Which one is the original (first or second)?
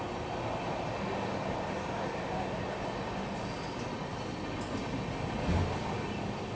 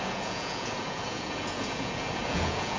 first